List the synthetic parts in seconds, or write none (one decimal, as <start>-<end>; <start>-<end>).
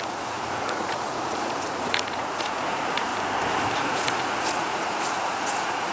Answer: 0.0-3.1; 3.8-5.9